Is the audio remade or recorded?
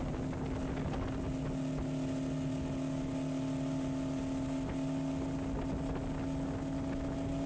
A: recorded